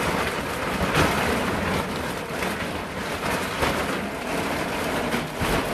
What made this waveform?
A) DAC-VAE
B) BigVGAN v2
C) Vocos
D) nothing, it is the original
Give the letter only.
D